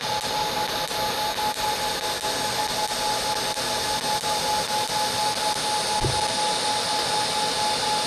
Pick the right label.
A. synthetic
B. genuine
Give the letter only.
B